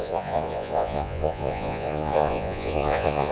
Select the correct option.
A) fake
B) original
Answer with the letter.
A